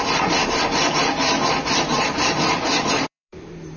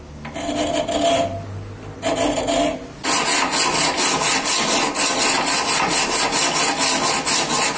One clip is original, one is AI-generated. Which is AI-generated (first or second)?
first